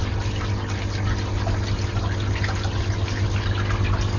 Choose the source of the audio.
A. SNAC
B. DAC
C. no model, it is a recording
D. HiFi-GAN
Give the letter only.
C